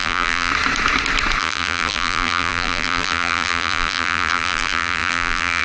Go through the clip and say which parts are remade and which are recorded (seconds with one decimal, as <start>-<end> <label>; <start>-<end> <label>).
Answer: 0.0-0.5 remade; 0.5-1.4 recorded; 1.4-5.6 remade